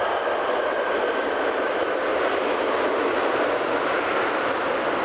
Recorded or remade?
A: recorded